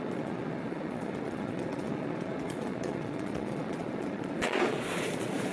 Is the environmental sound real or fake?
fake